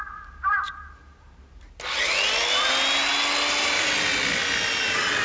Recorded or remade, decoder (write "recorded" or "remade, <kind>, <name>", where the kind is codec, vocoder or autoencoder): recorded